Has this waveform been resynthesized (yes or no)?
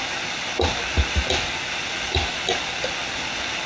no